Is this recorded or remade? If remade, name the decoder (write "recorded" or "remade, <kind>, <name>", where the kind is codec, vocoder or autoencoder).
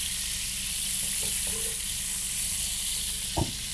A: recorded